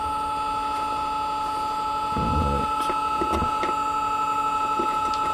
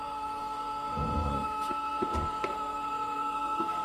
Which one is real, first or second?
first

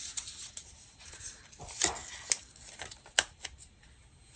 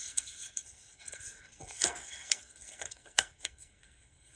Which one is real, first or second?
first